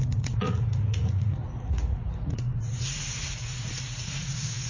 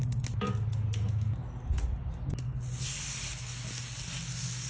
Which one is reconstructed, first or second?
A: first